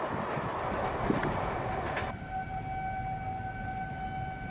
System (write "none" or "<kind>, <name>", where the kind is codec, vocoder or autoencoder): none